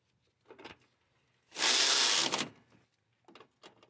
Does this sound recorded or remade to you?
recorded